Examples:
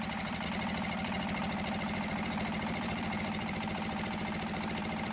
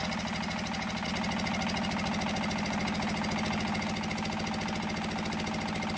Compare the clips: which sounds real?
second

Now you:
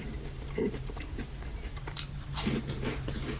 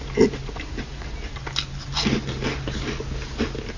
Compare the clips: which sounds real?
second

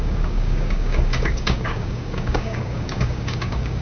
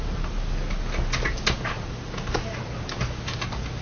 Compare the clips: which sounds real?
second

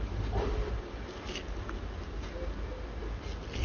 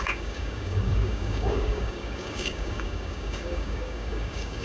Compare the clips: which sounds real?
first